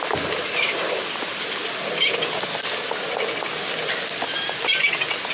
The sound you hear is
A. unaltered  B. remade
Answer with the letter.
A